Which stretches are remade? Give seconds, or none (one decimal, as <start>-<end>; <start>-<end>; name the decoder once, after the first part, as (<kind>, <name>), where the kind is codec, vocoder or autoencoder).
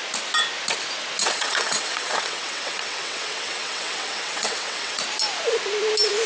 1.2-5.0 (vocoder, WaveNeXt)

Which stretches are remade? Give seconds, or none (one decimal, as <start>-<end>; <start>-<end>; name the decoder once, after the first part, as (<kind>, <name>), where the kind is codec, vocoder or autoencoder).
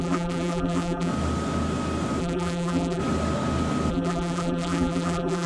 0.0-1.1 (vocoder, BigVGAN v2); 2.2-3.0; 3.9-5.5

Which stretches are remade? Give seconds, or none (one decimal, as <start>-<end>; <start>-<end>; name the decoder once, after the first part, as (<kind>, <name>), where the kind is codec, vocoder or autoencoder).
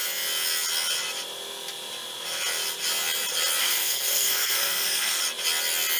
3.6-5.2 (codec, SNAC)